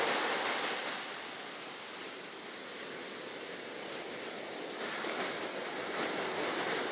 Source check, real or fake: real